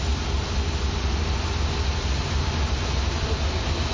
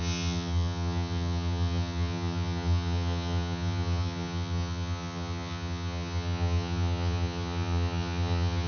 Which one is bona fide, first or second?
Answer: first